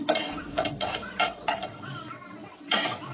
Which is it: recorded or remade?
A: remade